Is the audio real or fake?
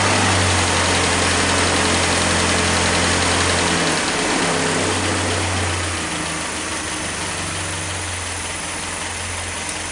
real